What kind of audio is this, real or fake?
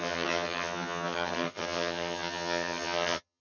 fake